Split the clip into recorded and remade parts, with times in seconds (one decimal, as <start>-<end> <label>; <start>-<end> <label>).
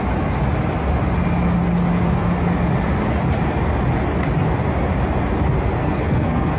0.0-5.8 recorded; 5.8-6.6 remade